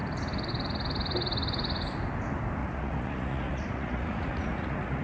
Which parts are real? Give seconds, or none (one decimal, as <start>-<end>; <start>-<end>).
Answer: 0.0-2.6